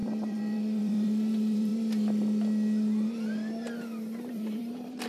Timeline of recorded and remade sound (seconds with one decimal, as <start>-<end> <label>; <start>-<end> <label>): 0.0-1.7 remade; 1.7-4.3 recorded; 4.3-5.1 remade